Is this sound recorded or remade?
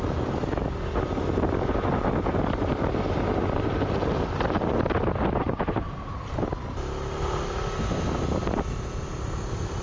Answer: recorded